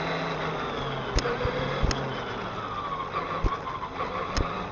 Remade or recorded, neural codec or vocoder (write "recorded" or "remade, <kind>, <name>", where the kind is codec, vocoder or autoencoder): recorded